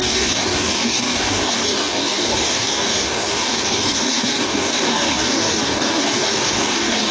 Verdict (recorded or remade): remade